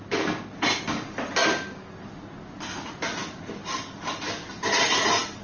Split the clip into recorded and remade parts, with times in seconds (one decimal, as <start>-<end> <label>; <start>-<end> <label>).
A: 0.0-5.4 recorded